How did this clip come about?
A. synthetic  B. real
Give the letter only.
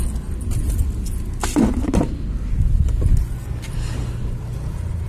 B